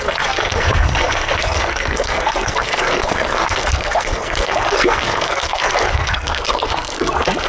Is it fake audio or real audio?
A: fake